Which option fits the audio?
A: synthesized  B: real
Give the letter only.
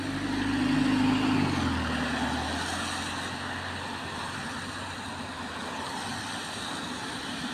B